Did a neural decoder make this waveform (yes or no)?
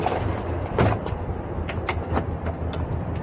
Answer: no